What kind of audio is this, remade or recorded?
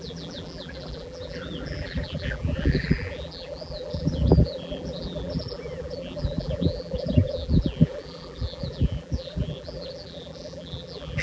remade